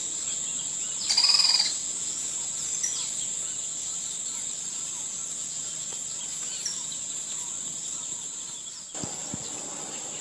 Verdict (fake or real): real